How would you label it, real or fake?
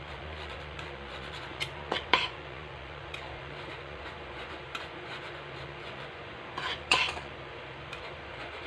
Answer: fake